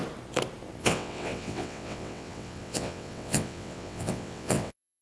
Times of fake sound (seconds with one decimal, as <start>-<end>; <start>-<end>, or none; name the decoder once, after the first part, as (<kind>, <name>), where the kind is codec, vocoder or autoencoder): 0.8-5.0 (vocoder, WaveNeXt)